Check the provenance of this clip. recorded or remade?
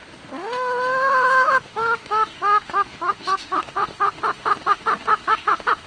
remade